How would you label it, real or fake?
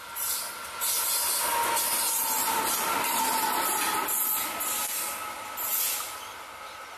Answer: real